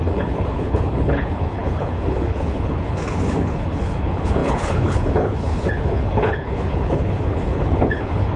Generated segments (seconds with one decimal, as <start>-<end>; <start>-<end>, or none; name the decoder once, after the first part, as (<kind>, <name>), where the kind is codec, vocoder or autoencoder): 0.0-8.4 (codec, HILCodec)